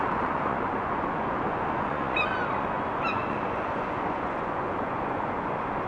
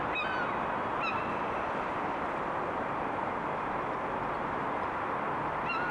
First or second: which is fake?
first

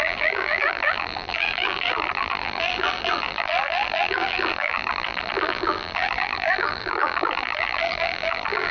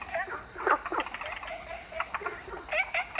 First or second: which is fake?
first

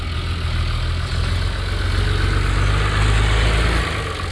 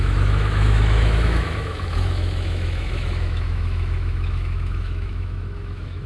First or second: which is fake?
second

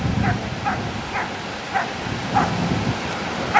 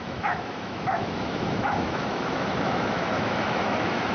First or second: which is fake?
second